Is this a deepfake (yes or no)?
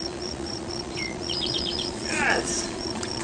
yes